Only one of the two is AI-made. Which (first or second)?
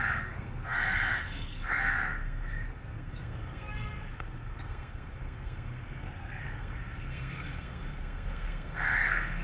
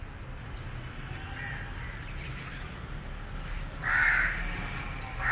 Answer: first